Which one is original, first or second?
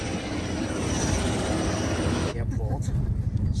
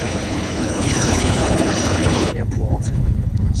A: first